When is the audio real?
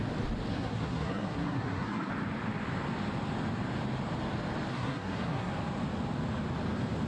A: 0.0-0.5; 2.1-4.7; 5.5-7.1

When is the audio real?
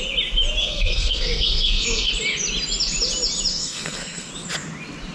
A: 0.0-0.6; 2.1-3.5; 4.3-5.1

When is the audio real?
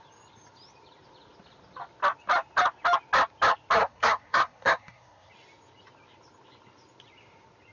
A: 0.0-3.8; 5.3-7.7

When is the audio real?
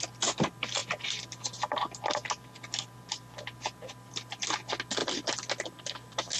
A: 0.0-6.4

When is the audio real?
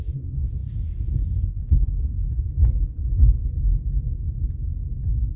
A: 2.5-5.4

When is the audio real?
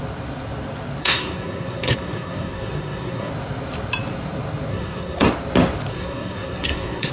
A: 0.0-1.0; 3.3-4.7; 5.3-5.9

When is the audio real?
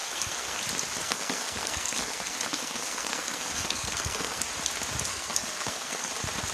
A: 0.6-1.0; 4.4-5.1; 6.1-6.5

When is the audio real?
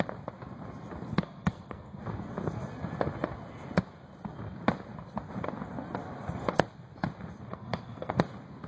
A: 0.0-1.1; 2.0-7.5; 8.1-8.7